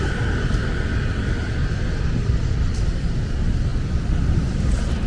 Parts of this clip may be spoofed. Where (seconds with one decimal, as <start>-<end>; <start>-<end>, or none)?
0.0-0.6; 1.1-5.1